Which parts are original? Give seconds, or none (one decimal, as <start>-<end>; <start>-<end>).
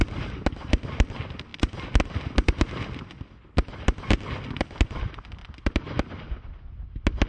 0.0-7.3